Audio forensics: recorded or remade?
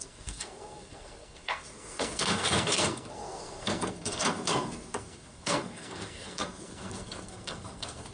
remade